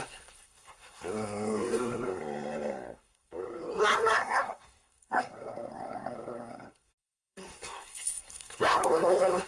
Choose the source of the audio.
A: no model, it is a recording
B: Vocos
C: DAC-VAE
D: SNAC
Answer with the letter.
D